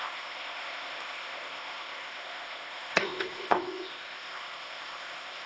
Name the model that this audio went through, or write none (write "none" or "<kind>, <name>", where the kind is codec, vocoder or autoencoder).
codec, ZipCodec